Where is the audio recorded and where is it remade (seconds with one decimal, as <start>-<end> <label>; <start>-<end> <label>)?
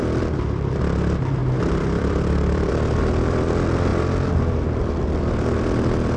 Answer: 0.0-6.2 remade